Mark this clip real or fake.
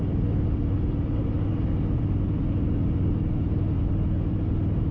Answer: real